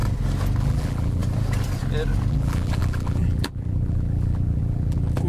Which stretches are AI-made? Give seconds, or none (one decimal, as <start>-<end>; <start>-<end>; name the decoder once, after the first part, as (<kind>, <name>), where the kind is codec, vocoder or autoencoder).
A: 0.6-1.2 (vocoder, BigVGAN v2); 2.3-5.3